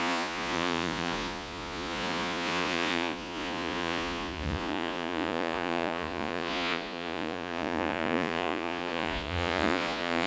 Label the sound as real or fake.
fake